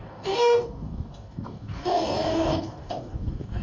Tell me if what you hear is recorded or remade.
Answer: remade